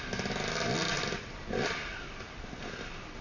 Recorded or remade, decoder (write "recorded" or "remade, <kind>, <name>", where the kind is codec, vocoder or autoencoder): recorded